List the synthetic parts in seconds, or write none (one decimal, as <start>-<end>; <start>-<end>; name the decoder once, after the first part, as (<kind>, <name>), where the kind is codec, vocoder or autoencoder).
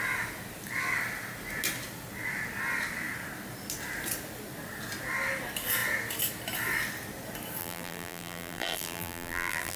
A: 7.6-9.8 (vocoder, BigVGAN v2)